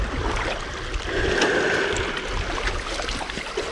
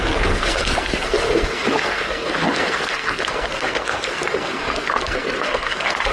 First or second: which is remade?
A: second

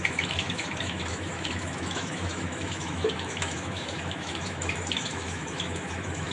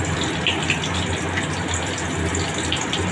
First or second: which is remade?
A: first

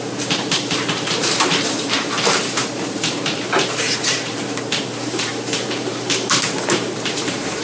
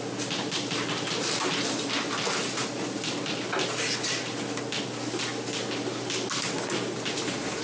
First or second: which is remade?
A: first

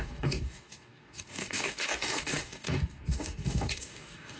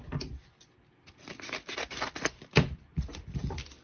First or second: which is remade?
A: first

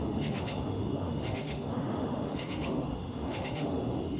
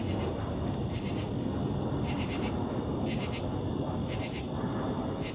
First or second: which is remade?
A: first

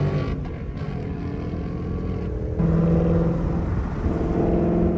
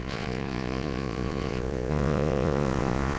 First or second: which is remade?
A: second